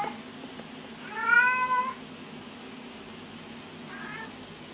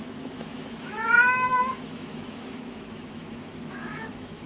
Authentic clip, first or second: first